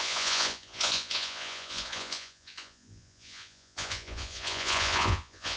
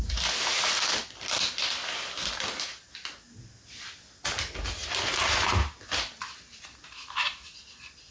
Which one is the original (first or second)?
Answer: second